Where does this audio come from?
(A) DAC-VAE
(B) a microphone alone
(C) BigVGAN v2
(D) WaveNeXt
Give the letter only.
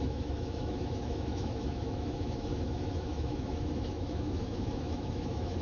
A